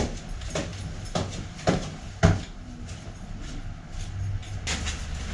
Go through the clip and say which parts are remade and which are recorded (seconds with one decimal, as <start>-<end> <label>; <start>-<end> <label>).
0.0-5.3 recorded